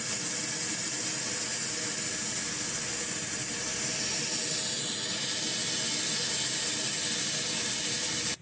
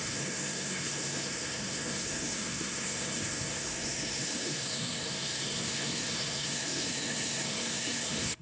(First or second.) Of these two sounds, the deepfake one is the second